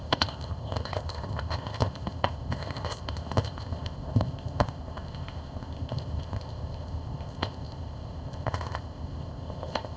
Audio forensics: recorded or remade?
remade